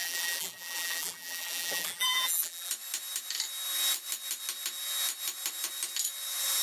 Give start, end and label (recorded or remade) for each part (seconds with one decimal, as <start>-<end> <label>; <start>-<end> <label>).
0.0-2.7 remade; 2.7-6.6 recorded